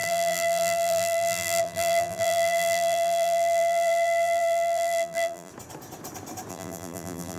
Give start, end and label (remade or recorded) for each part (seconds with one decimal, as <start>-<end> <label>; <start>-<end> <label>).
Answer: 0.0-5.5 remade; 5.5-6.5 recorded; 6.5-7.4 remade